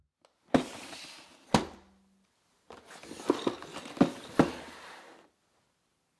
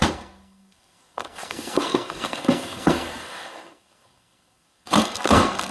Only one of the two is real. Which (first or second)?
first